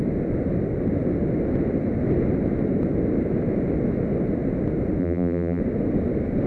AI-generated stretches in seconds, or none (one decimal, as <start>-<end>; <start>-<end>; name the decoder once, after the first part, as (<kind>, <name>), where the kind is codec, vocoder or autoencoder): 5.0-5.6 (vocoder, BigVGAN v2)